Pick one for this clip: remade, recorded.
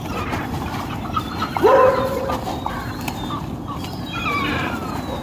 recorded